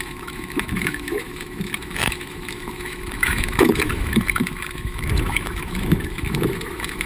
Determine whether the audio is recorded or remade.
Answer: remade